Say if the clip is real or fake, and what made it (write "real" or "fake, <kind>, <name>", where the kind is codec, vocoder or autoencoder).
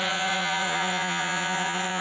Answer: fake, vocoder, Vocos